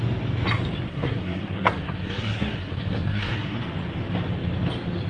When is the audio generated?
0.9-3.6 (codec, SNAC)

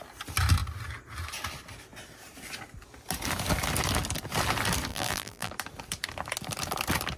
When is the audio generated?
4.9-5.5 (vocoder, BigVGAN v2)